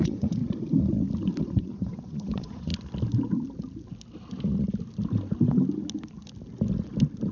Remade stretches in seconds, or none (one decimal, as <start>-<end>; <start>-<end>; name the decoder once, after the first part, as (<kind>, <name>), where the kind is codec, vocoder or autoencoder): 0.0-0.4 (vocoder, Vocos); 1.4-2.7